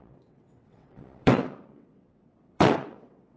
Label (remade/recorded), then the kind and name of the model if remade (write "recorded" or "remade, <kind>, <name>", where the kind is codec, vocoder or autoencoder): remade, vocoder, WaveNeXt